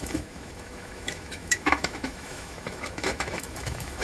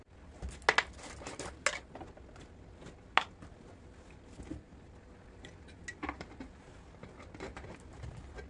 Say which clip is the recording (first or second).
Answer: second